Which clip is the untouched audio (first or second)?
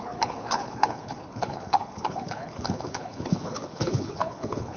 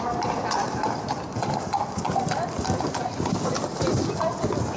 second